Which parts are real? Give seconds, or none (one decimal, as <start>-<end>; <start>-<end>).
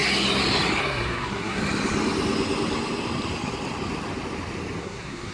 0.0-0.8; 1.6-4.8